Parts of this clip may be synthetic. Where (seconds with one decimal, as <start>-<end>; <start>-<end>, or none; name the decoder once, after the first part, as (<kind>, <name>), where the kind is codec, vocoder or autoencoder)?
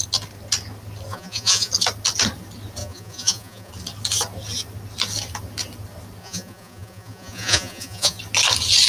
1.1-1.7 (vocoder, Vocos); 2.8-3.7; 6.2-8.2